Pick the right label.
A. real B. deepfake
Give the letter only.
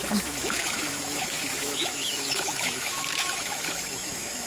B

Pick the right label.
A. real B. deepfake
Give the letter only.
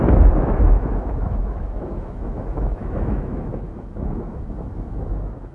B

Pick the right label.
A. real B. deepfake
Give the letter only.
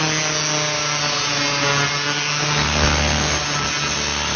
A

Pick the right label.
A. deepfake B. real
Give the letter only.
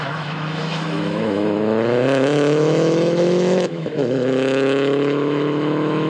A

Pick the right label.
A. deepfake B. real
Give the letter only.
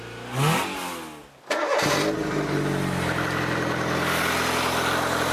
B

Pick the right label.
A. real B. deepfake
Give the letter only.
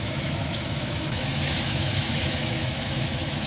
B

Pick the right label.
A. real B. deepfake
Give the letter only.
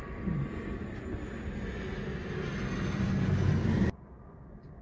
A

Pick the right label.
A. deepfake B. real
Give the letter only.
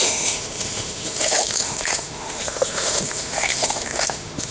A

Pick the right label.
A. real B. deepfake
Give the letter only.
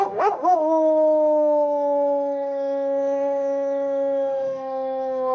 B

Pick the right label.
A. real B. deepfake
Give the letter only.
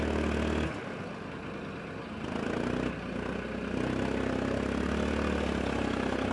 A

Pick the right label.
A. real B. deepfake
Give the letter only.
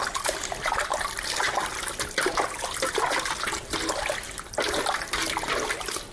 A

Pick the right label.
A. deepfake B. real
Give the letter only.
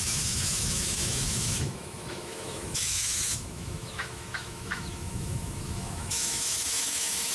A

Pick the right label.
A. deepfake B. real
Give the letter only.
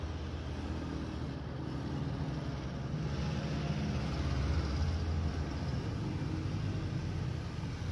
B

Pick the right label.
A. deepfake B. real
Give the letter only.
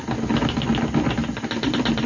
B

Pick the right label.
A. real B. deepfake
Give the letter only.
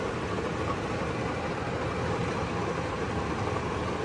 A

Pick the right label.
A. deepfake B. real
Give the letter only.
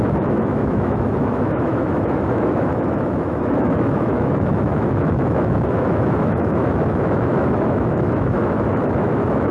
A